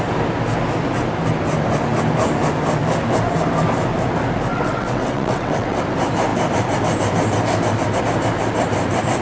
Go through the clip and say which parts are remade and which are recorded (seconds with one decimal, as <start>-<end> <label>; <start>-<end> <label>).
0.0-4.5 recorded; 4.5-5.8 remade; 5.8-9.2 recorded